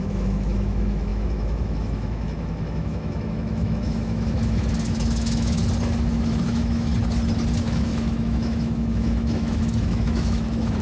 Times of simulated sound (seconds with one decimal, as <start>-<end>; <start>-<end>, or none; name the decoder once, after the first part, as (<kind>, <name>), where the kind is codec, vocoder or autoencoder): 0.0-5.6 (autoencoder, DAC-VAE); 6.1-6.9; 7.6-10.8